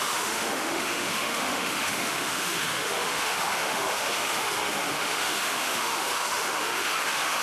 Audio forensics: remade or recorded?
remade